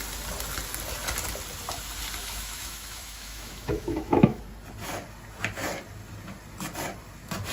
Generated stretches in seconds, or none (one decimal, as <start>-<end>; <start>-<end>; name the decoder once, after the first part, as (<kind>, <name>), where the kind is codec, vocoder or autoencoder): 2.2-4.4 (autoencoder, DAC-VAE)